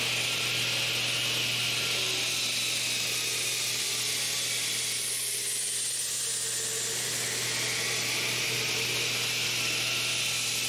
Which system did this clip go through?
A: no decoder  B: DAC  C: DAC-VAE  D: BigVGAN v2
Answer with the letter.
A